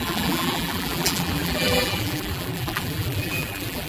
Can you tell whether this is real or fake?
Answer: fake